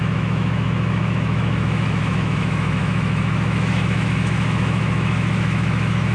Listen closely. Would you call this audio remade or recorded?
remade